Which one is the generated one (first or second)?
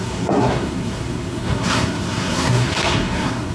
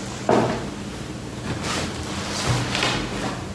first